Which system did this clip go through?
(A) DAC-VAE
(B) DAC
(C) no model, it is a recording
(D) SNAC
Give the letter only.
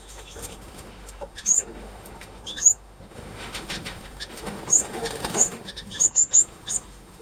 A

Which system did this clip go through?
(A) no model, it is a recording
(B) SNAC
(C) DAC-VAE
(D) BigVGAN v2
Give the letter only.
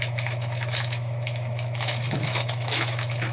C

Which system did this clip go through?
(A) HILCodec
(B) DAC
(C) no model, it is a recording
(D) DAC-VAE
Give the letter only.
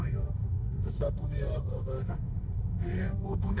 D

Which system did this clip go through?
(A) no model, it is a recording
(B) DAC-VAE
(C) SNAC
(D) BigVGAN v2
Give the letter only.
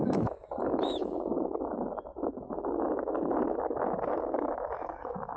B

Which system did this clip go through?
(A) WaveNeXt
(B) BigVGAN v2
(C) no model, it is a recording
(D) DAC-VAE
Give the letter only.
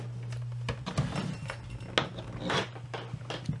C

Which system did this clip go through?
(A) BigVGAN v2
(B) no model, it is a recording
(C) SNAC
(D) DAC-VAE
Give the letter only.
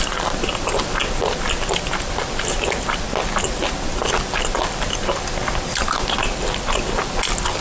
B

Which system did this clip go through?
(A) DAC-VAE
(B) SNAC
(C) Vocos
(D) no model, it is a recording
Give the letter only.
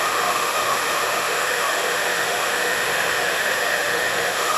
A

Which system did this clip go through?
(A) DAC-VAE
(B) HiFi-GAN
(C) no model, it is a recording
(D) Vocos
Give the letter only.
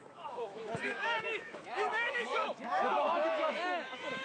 A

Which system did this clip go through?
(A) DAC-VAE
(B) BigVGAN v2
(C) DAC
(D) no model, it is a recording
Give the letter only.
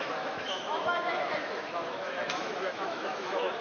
A